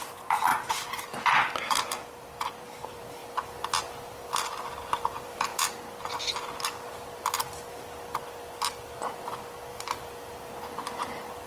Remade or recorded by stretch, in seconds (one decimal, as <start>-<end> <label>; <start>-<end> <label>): 0.0-0.5 remade; 0.5-1.3 recorded; 1.3-3.2 remade; 3.2-4.1 recorded; 4.1-5.5 remade; 5.5-9.7 recorded; 9.7-11.5 remade